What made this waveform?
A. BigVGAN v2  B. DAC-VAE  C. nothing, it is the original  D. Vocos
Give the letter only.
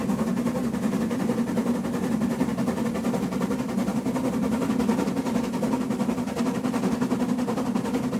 C